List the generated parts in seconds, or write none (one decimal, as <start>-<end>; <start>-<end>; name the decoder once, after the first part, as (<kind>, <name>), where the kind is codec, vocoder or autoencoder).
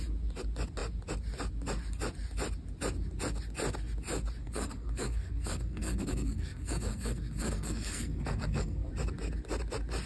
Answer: 4.4-8.9 (codec, SNAC)